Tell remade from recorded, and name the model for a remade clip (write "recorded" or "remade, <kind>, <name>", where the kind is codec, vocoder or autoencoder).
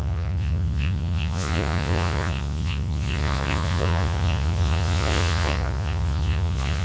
remade, vocoder, Vocos